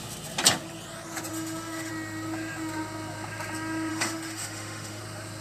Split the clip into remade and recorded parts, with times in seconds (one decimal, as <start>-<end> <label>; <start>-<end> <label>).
0.0-1.3 recorded; 1.3-1.9 remade; 1.9-3.9 recorded; 3.9-5.0 remade; 5.0-5.4 recorded